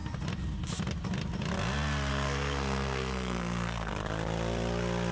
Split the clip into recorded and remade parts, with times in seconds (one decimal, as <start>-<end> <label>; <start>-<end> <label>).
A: 0.0-2.1 recorded; 2.1-3.9 remade; 3.9-5.1 recorded